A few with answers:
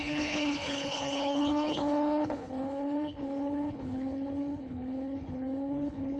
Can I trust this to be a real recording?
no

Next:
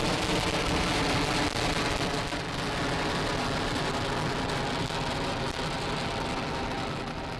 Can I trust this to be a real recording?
yes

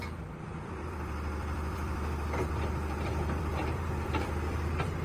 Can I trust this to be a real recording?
no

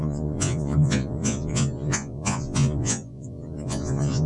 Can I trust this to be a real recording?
no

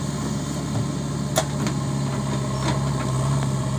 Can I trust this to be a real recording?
yes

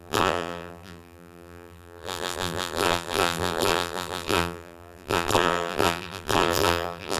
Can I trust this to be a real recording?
no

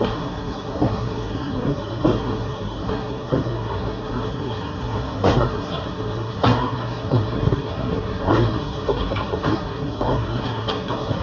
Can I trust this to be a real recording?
no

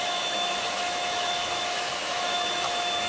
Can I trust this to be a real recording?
no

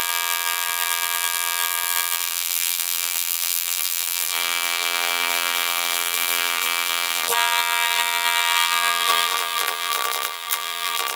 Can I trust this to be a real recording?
no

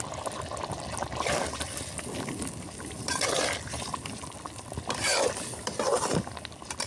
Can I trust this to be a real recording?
no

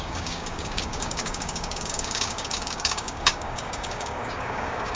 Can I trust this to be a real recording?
no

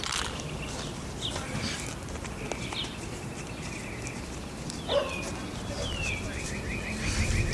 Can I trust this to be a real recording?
yes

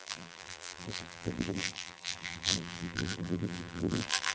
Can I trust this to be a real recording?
no